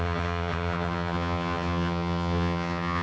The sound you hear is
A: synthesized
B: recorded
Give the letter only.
A